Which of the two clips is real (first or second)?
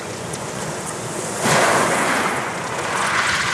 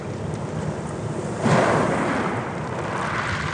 second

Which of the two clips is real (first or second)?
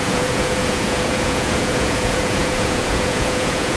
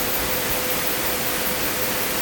second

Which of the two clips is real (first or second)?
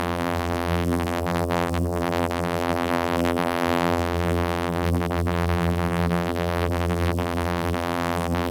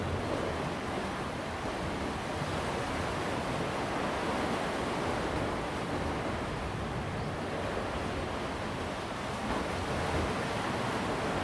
second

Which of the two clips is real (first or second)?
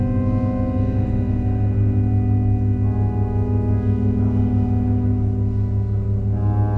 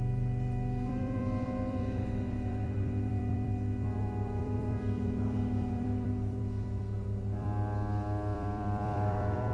first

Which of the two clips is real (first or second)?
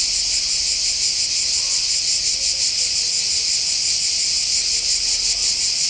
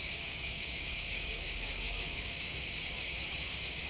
first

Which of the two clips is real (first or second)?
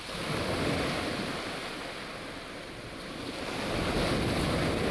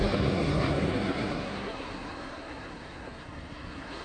first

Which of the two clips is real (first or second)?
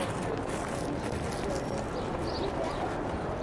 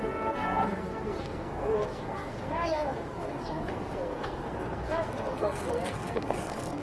first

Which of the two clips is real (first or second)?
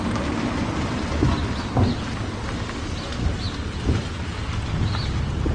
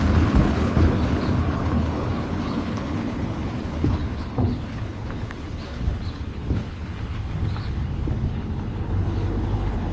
first